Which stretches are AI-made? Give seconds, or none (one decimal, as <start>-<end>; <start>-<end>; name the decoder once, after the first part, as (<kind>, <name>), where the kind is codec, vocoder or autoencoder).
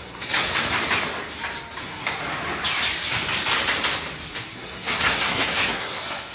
0.0-0.5 (codec, SNAC); 1.8-2.2; 4.5-6.3